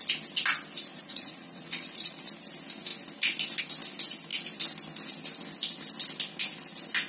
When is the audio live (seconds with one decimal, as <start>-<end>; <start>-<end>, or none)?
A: 0.0-0.9; 2.2-7.1